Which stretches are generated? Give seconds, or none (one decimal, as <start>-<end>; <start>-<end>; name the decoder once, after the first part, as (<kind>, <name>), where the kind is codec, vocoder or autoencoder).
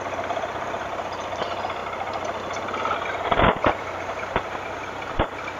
none